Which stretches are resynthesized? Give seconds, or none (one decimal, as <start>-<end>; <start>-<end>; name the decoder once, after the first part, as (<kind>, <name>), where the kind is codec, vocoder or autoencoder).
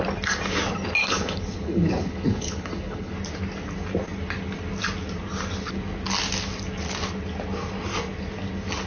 1.0-3.1 (codec, HILCodec)